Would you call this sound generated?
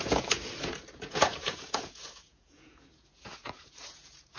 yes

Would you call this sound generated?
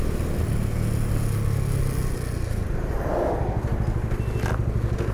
no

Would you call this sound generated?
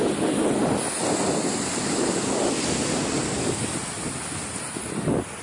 no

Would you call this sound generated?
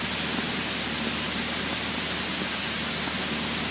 no